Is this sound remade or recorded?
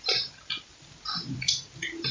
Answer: remade